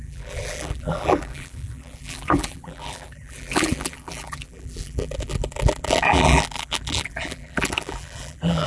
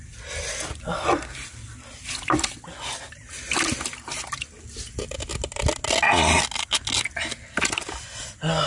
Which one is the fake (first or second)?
first